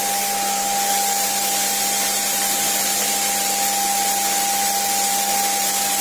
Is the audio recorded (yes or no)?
yes